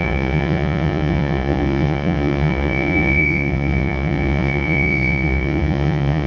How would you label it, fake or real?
fake